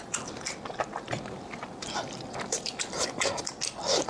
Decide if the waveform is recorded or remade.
remade